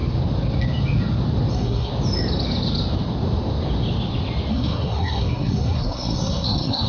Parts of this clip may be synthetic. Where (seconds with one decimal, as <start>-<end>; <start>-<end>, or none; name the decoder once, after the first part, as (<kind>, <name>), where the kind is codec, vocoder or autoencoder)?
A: 1.5-1.9 (codec, SNAC); 4.5-6.9